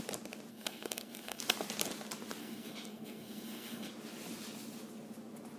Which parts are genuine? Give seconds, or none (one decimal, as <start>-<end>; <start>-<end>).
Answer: 0.0-0.5; 1.4-2.4; 3.9-5.6